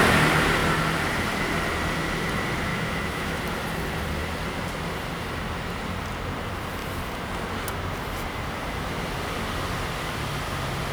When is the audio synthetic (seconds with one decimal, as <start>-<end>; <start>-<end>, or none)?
2.7-3.4